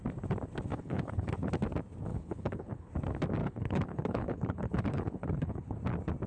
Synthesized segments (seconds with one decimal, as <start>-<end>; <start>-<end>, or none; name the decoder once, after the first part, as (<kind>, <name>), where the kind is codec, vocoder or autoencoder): 0.7-1.3 (codec, HILCodec); 2.1-2.9; 3.4-5.8